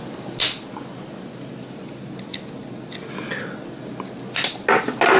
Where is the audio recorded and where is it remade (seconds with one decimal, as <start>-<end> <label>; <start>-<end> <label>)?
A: 0.0-5.2 recorded